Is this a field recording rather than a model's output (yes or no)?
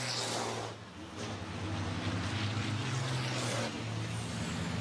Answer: yes